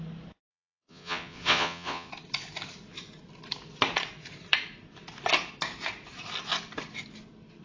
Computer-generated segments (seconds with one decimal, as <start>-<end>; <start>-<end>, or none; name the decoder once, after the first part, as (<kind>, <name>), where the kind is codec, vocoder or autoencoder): 0.5-2.1 (vocoder, Vocos)